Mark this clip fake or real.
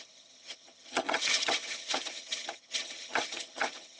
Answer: fake